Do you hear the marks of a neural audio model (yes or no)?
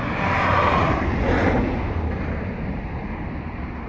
yes